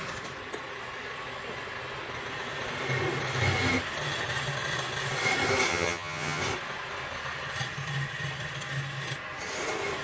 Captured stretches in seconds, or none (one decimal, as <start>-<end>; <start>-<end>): 0.0-5.7; 6.4-10.0